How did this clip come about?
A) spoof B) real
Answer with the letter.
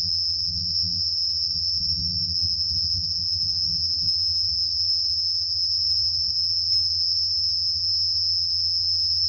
A